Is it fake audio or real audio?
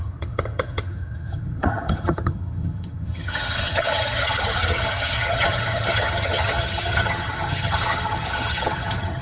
fake